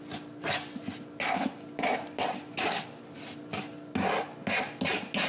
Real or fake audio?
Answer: real